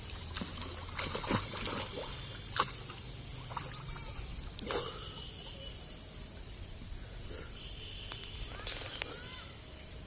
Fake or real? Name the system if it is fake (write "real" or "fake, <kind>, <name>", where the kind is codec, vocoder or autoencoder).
real